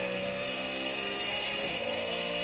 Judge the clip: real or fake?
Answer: fake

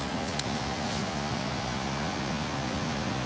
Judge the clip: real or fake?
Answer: fake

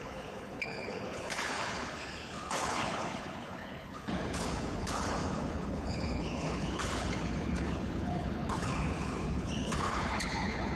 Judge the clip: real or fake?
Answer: fake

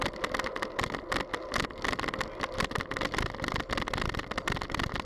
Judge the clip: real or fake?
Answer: real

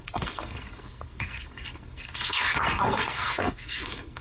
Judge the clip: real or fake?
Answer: fake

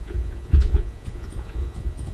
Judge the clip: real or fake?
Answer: fake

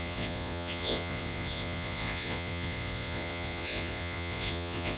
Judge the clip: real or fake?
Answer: fake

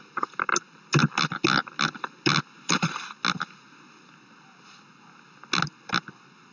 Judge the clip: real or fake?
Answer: real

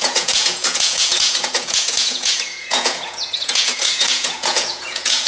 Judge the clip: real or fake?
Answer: fake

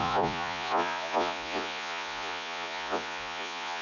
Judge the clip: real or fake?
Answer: fake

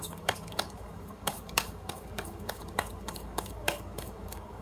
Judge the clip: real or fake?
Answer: fake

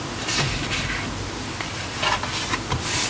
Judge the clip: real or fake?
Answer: fake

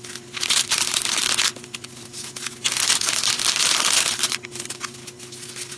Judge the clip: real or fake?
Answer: real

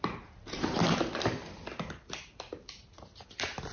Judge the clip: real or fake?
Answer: real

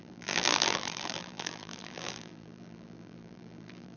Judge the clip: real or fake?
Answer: fake